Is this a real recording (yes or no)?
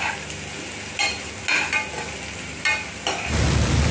yes